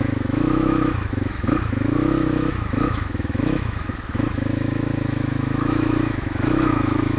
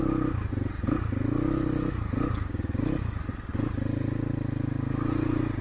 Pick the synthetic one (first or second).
first